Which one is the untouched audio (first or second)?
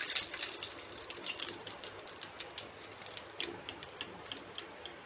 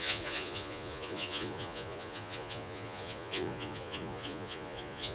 first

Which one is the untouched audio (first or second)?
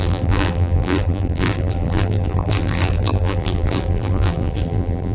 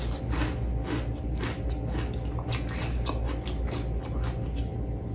second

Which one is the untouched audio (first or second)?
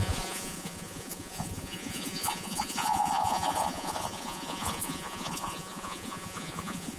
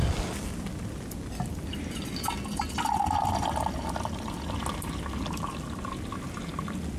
second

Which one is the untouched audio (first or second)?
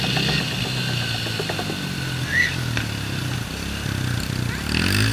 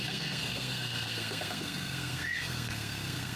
first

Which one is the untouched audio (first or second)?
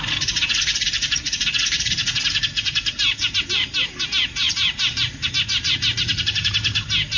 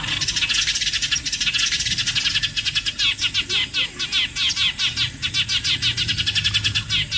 second